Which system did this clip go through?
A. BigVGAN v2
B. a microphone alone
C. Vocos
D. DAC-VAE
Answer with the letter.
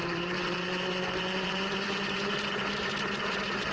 A